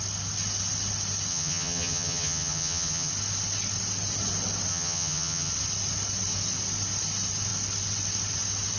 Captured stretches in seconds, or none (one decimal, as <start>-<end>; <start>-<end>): 0.0-1.3; 3.1-4.7; 5.5-8.8